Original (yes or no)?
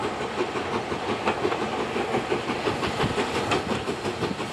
yes